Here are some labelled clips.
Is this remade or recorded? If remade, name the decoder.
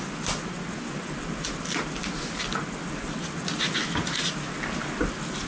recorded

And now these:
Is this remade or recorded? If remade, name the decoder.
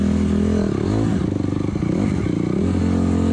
recorded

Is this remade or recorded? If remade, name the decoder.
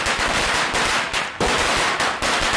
recorded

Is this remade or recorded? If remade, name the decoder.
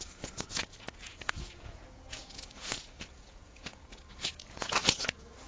remade, vocoder, Vocos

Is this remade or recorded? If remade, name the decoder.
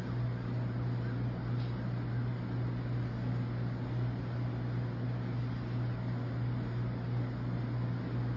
recorded